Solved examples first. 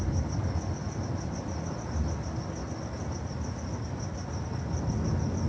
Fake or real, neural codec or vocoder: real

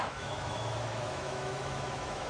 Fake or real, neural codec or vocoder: fake, autoencoder, DAC-VAE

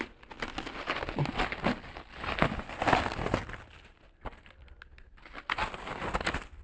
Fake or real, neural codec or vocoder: real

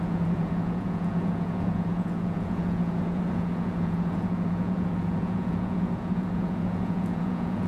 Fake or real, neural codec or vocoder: fake, vocoder, Vocos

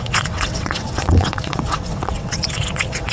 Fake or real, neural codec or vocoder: fake, vocoder, WaveNeXt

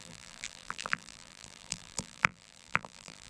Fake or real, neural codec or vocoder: fake, vocoder, BigVGAN v2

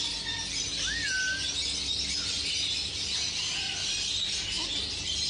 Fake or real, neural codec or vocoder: real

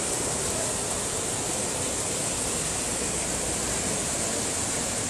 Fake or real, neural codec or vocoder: real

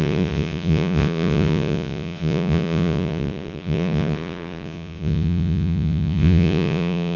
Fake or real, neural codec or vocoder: fake, vocoder, Vocos